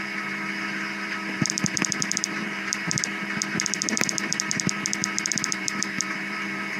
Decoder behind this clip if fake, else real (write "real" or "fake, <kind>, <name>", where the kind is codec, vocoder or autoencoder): fake, vocoder, BigVGAN v2